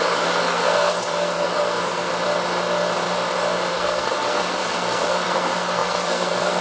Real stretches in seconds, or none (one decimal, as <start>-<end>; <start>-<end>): 2.1-3.7